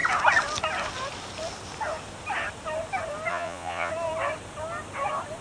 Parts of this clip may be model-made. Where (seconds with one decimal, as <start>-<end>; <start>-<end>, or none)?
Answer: 3.3-3.9